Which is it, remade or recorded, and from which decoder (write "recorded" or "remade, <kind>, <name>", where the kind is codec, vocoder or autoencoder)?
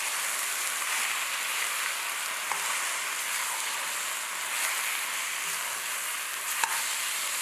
recorded